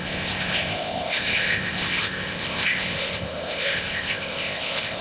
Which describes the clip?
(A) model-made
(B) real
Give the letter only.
A